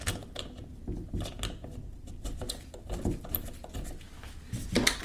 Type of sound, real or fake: real